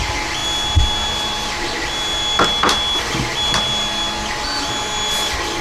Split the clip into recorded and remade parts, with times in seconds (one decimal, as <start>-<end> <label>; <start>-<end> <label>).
0.0-5.6 recorded